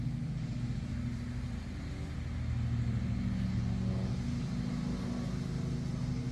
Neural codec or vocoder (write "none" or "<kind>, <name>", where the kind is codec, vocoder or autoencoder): none